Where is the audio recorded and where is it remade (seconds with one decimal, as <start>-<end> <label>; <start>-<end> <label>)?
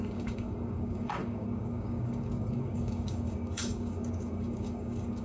0.0-5.2 remade